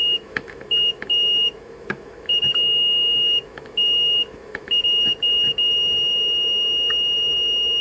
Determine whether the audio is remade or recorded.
remade